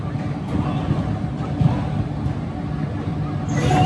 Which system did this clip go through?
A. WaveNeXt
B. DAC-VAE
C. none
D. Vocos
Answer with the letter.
C